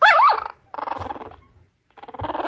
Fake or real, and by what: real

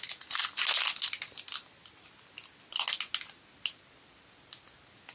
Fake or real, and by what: real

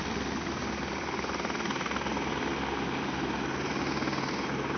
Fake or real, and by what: real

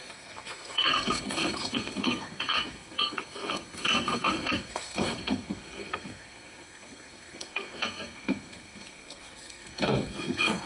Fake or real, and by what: fake, codec, SNAC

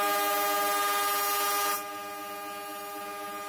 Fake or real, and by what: real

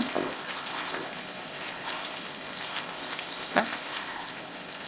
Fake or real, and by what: fake, codec, ZipCodec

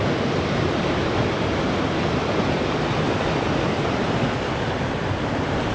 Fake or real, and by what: real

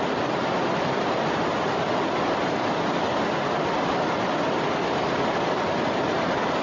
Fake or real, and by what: real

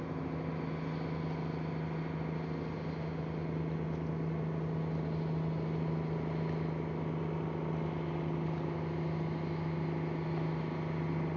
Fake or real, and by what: real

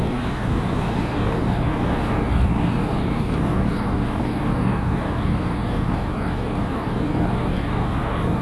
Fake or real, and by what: fake, codec, DAC